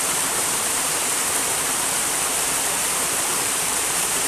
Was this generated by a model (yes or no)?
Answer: yes